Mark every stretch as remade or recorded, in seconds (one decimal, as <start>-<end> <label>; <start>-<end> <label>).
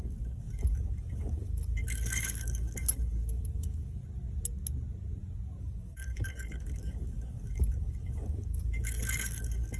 0.0-4.0 remade; 4.0-5.6 recorded; 5.6-9.8 remade